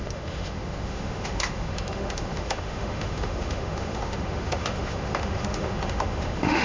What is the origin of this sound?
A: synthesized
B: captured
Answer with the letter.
A